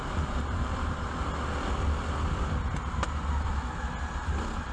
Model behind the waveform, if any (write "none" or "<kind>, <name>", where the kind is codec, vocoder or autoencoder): none